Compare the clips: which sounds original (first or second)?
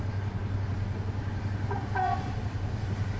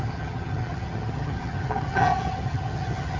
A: first